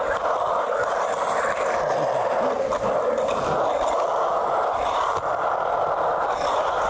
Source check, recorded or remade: recorded